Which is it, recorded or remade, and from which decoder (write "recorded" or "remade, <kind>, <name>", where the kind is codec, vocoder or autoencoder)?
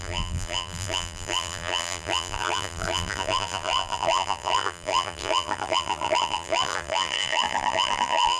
remade, vocoder, BigVGAN v2